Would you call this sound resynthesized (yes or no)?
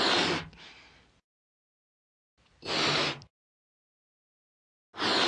no